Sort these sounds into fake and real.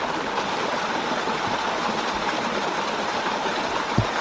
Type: real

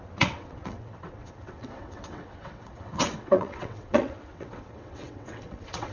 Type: fake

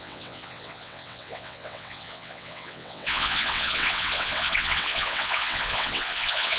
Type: fake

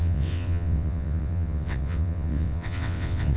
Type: fake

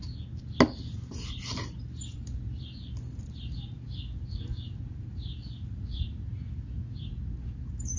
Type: real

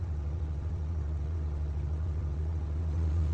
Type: fake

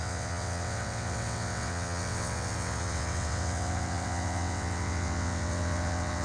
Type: fake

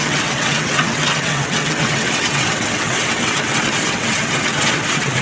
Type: fake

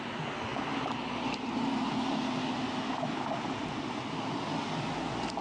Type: real